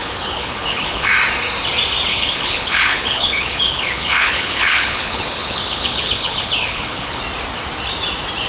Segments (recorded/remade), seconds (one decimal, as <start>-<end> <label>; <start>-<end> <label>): 0.0-1.1 remade; 1.1-2.1 recorded; 2.1-7.2 remade; 7.2-8.5 recorded